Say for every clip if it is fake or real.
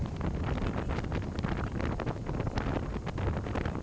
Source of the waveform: real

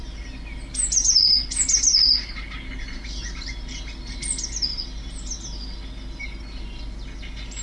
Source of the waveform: real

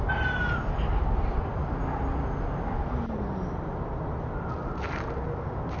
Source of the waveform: real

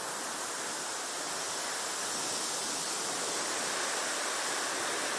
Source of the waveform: real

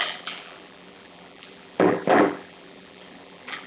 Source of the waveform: fake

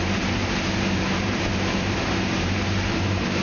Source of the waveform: fake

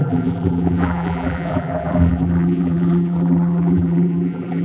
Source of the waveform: fake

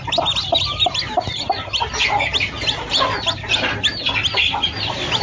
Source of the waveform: real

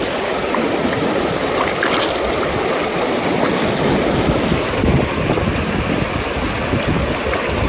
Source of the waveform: real